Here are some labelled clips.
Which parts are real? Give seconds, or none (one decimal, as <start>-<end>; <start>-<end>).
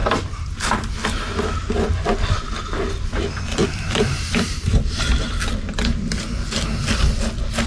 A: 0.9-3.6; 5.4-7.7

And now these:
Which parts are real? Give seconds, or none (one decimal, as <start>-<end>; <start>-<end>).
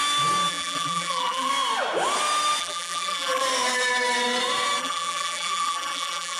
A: 0.0-0.5; 1.5-2.6; 3.4-4.8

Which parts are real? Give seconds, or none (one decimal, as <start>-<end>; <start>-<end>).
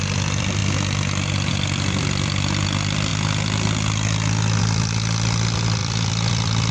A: 0.6-1.5; 3.1-4.6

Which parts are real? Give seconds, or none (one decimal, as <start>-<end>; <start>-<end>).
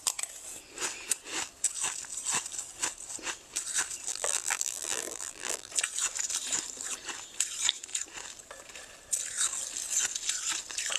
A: 0.0-4.1; 5.7-11.0